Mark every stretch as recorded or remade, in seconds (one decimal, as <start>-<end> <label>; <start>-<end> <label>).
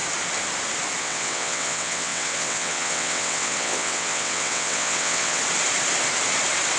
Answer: 0.0-1.0 recorded; 1.0-5.4 remade; 5.4-6.8 recorded